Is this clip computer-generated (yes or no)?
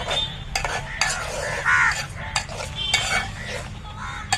no